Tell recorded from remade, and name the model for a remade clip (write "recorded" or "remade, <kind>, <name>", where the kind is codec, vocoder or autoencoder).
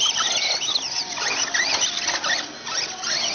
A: recorded